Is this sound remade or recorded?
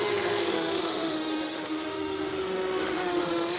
remade